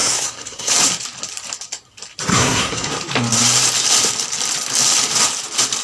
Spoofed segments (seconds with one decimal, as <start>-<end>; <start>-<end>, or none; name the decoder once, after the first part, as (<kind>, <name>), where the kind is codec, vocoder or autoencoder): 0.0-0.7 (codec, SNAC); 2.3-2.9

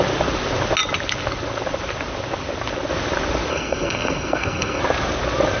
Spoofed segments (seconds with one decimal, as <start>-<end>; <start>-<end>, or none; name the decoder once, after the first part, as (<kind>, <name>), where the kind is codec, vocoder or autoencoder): 3.5-4.8 (codec, SNAC)

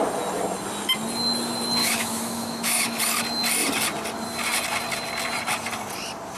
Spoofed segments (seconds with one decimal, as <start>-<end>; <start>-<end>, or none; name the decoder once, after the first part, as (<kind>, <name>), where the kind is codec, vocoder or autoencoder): 1.8-3.0 (autoencoder, DAC-VAE)